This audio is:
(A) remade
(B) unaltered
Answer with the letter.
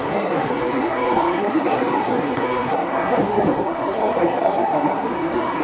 A